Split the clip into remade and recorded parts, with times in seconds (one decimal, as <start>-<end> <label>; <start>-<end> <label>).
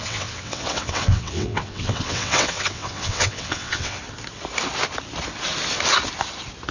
0.0-4.0 remade; 4.0-6.7 recorded